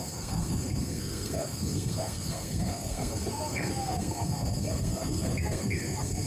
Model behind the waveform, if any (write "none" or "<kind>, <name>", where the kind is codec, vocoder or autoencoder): codec, SNAC